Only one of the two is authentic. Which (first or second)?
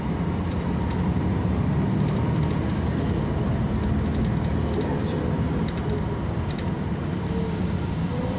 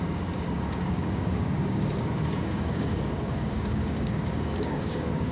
first